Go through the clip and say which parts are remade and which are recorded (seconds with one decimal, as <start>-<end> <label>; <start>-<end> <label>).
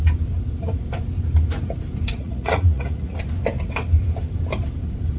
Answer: 0.0-2.2 recorded; 2.2-3.2 remade; 3.2-5.2 recorded